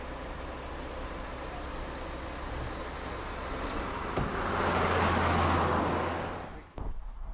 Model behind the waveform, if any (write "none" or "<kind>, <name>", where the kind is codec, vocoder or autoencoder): none